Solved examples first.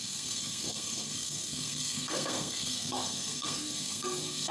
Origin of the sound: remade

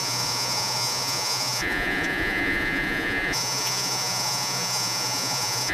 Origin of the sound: remade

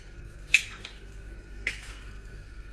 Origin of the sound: remade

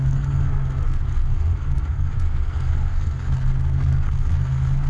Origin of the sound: remade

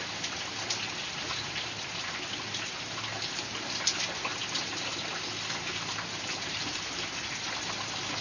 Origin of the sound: recorded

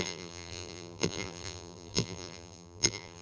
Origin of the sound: remade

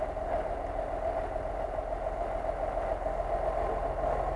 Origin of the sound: recorded